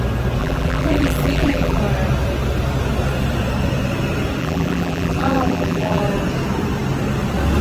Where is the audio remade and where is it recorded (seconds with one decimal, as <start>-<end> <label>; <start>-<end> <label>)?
0.0-0.4 recorded; 0.4-1.8 remade; 1.8-4.4 recorded; 4.4-6.0 remade; 6.0-7.6 recorded